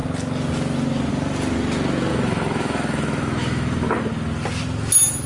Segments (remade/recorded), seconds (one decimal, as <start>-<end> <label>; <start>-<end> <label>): 0.0-2.1 recorded; 2.1-4.1 remade; 4.1-5.3 recorded